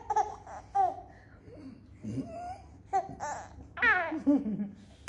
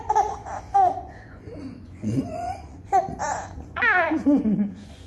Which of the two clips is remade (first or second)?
second